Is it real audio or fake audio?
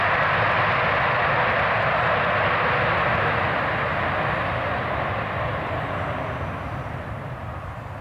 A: real